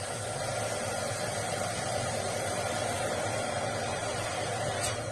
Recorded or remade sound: recorded